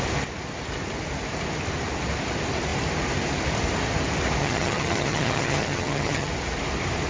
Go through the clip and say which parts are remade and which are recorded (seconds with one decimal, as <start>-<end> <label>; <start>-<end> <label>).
0.0-4.4 recorded; 4.4-6.3 remade; 6.3-7.1 recorded